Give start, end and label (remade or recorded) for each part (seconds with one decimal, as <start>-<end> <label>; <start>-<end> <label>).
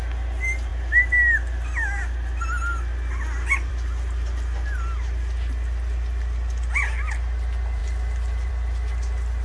0.0-9.4 recorded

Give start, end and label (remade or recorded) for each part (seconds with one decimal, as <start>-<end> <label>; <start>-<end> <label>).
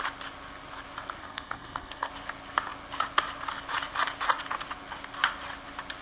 0.0-1.2 recorded; 1.2-2.1 remade; 2.1-6.0 recorded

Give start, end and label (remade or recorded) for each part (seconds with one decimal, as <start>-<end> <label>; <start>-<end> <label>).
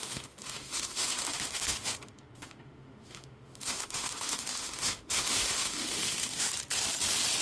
0.0-6.5 remade; 6.5-7.4 recorded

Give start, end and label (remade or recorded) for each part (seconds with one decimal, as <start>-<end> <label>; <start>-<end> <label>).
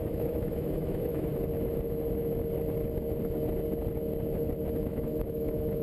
0.0-1.3 remade; 1.3-4.8 recorded; 4.8-5.8 remade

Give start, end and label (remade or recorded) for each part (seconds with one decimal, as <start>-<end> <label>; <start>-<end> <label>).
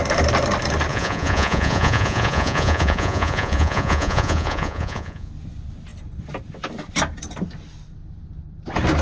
0.0-0.9 recorded; 0.9-5.3 remade; 5.3-9.0 recorded